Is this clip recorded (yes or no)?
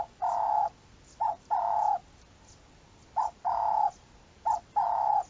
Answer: yes